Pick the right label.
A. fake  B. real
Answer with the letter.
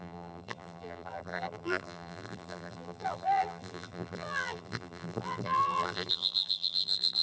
A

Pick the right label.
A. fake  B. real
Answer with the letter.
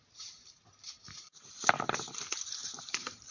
A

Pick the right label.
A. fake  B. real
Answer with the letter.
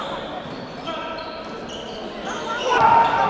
B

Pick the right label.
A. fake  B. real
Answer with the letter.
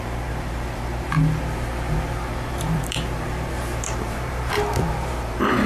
A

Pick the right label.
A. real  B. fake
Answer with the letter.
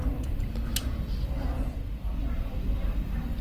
A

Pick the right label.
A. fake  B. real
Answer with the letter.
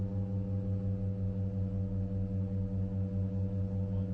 B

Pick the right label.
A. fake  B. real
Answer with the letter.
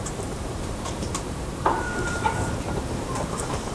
A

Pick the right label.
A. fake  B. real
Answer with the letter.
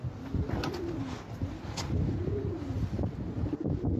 B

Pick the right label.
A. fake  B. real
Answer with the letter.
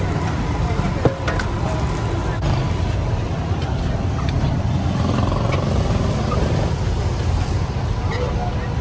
B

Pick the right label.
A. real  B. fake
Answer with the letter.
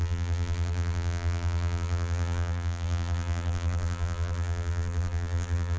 B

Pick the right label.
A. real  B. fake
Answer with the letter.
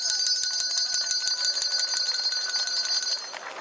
A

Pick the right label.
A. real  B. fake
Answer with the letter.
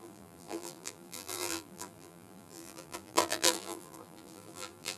B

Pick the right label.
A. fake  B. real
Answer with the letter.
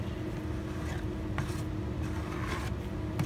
B